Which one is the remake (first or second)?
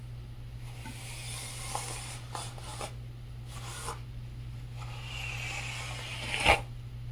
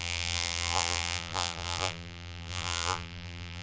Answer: second